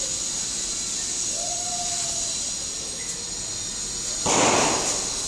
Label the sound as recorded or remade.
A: recorded